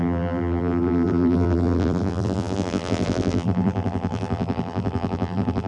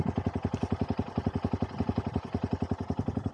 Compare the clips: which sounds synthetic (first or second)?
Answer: first